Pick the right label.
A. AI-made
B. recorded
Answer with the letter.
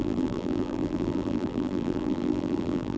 A